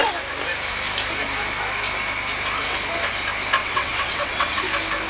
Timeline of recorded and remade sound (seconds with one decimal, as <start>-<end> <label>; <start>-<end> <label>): 0.0-3.6 recorded; 3.6-4.6 remade; 4.6-5.1 recorded